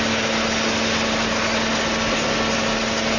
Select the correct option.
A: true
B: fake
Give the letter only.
A